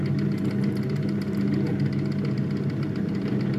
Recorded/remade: recorded